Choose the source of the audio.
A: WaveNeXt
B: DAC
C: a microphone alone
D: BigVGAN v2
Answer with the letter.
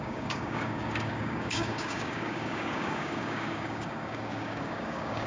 B